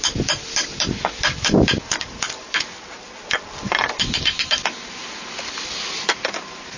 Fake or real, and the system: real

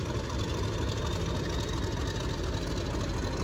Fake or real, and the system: real